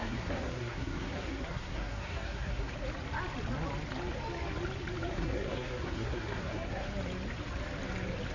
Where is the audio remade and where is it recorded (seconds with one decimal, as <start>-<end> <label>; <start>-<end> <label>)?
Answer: 0.0-2.7 remade; 2.7-5.1 recorded; 5.1-6.9 remade; 6.9-8.3 recorded